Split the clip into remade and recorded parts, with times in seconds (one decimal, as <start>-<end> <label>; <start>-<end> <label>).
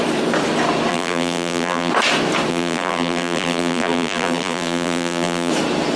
0.0-0.9 recorded; 0.9-1.9 remade; 1.9-2.5 recorded; 2.5-5.5 remade; 5.5-6.0 recorded